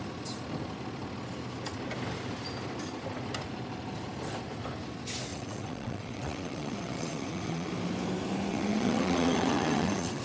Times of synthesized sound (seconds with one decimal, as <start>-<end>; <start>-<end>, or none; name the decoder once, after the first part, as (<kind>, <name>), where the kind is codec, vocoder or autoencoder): 5.3-7.7 (vocoder, WaveNeXt); 8.5-10.2